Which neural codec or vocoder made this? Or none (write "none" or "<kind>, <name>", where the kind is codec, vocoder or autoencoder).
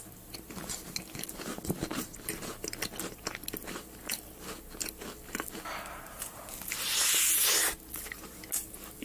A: none